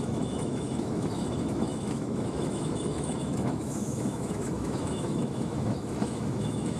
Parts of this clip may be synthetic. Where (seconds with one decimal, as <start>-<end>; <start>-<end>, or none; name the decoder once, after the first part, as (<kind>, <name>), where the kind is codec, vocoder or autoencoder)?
0.0-6.8 (autoencoder, DAC-VAE)